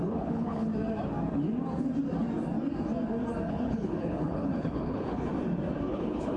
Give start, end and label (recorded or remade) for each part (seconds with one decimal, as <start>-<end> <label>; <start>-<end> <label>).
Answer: 0.0-0.7 remade; 0.7-3.5 recorded; 3.5-5.3 remade; 5.3-5.9 recorded; 5.9-6.4 remade